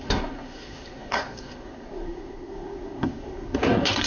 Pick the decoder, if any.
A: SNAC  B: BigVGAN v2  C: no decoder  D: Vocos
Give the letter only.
A